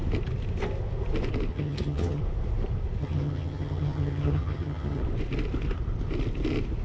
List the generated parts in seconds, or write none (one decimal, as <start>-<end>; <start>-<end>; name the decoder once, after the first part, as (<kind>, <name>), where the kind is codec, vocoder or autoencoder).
1.5-2.2 (vocoder, HiFi-GAN); 3.0-5.0